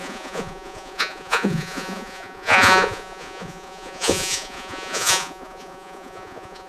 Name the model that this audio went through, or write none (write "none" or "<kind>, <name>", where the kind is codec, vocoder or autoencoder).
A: vocoder, Vocos